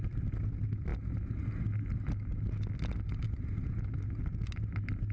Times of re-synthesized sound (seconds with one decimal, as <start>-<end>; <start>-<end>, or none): none